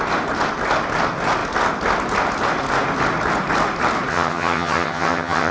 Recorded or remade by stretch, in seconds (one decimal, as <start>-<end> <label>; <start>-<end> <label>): 0.0-4.1 recorded; 4.1-5.5 remade